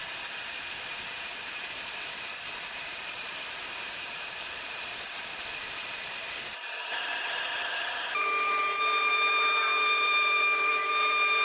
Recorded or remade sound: remade